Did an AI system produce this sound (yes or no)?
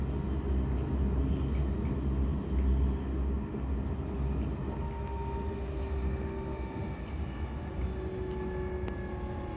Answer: no